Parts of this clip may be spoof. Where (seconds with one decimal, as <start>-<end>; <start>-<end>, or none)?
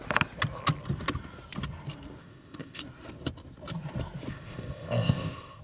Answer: 2.2-2.8; 4.3-5.6